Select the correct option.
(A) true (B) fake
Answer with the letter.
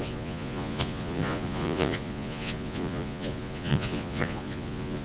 B